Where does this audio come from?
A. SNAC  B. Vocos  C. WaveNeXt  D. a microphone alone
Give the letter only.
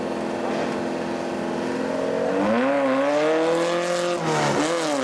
D